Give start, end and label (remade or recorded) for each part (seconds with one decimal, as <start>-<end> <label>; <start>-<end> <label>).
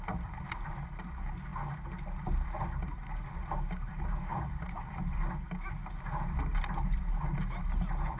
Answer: 0.0-4.3 recorded; 4.3-5.3 remade; 5.3-8.2 recorded